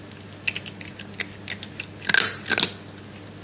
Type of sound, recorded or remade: recorded